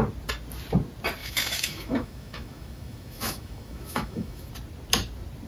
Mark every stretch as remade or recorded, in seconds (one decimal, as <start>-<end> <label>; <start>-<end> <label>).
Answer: 0.0-1.2 recorded; 1.2-4.5 remade; 4.5-5.5 recorded